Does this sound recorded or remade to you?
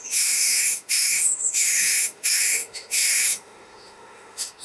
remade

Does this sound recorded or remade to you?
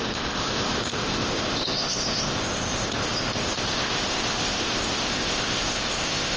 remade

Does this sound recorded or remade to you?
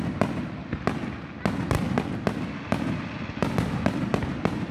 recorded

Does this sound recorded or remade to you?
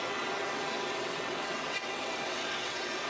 remade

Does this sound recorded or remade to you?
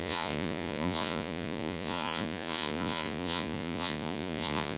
remade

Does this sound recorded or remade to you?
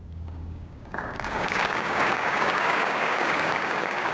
remade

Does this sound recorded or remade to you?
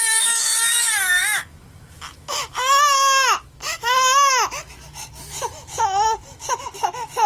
remade